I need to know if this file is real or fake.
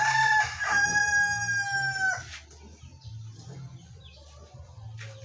real